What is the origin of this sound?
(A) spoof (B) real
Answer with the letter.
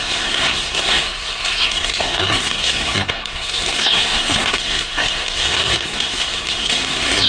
A